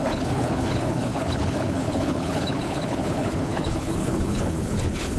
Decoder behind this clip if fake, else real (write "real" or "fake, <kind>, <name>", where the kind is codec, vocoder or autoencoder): fake, codec, HILCodec